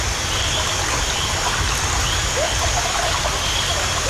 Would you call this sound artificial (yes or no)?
no